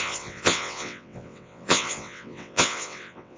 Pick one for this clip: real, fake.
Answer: fake